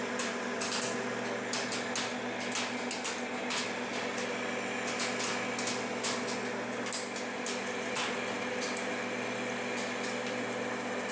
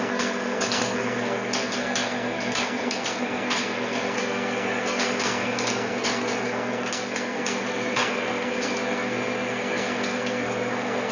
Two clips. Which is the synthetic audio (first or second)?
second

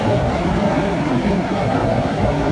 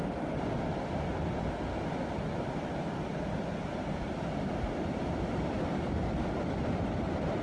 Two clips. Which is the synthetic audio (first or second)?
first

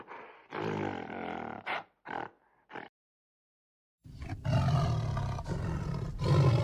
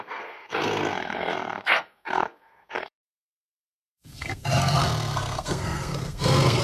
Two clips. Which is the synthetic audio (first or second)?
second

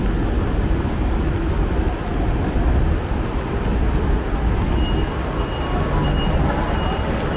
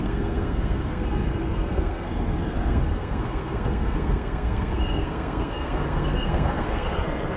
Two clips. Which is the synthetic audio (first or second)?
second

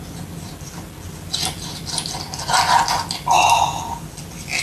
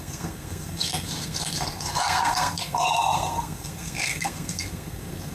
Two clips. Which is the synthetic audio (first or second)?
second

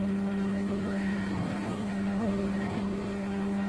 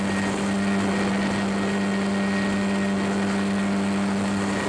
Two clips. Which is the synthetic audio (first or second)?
first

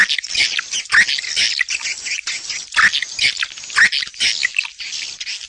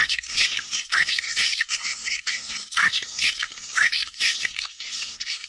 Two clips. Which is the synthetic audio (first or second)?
second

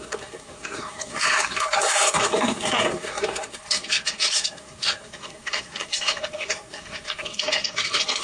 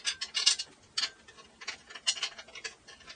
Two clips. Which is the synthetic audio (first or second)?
first